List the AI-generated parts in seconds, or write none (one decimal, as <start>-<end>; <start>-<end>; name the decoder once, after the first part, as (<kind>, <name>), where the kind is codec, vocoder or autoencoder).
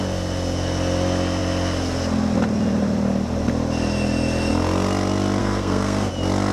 5.4-6.1 (codec, SNAC)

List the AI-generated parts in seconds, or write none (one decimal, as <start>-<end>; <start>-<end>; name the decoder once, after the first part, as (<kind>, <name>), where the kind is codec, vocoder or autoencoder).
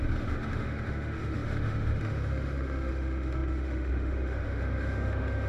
0.0-5.5 (autoencoder, DAC-VAE)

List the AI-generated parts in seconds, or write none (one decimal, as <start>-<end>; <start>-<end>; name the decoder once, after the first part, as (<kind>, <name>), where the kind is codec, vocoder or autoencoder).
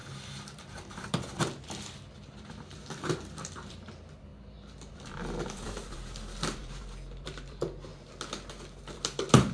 0.0-4.3 (vocoder, BigVGAN v2); 4.9-7.9; 8.8-9.5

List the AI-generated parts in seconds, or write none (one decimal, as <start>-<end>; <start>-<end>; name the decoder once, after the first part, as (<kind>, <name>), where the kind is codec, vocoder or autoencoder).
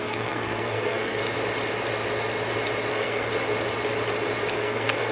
0.0-1.2 (codec, SNAC); 2.9-3.3; 4.5-5.1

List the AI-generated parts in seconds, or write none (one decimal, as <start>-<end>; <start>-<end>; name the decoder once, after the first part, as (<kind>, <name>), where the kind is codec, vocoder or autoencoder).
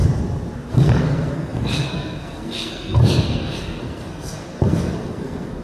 0.7-5.6 (codec, SNAC)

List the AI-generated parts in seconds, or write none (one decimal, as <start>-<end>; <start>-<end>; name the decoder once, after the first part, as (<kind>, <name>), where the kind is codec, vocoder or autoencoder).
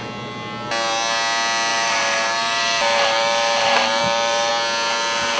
1.7-4.5 (vocoder, BigVGAN v2)